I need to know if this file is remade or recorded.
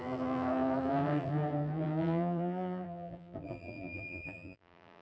remade